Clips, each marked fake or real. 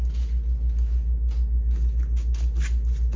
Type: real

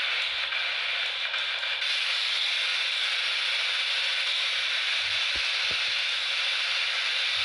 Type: real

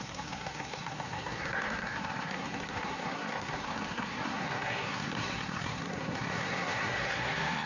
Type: fake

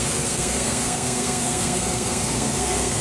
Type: fake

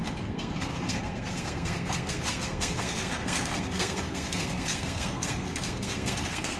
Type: fake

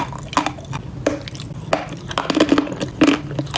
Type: real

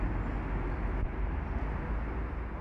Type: real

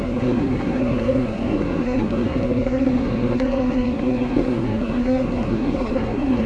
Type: fake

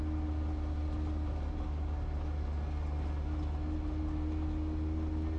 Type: real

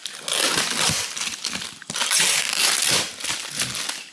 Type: real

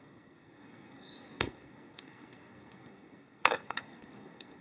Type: fake